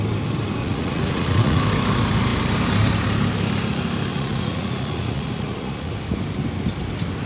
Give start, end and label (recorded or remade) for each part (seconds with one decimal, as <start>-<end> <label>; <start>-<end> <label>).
0.0-0.6 recorded; 0.6-1.6 remade; 1.6-4.1 recorded; 4.1-5.9 remade; 5.9-7.3 recorded